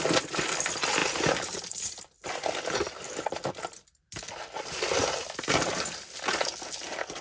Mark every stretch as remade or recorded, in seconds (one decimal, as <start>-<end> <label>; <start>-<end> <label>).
0.0-7.2 recorded